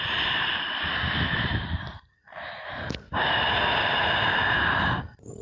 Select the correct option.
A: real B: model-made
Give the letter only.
A